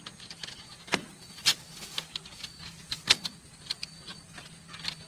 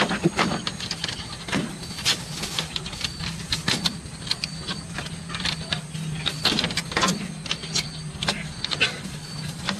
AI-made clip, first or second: second